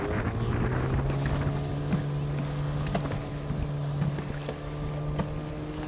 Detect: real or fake real